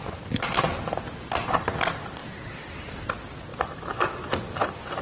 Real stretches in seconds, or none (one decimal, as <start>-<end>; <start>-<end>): 1.7-2.2; 3.1-3.5